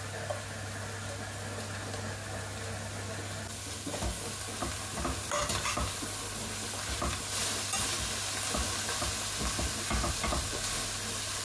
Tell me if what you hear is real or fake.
real